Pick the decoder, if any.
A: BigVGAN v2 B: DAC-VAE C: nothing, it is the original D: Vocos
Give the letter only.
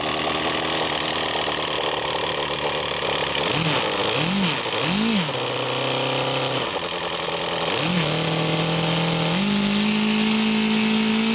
C